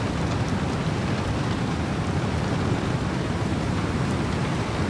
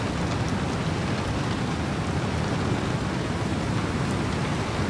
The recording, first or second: second